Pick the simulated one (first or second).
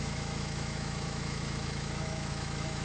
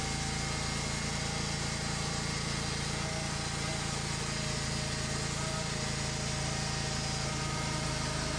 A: first